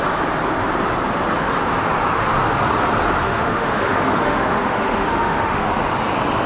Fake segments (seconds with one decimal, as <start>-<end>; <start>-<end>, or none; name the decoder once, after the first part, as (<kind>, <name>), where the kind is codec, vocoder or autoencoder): 3.2-5.7 (autoencoder, DAC-VAE)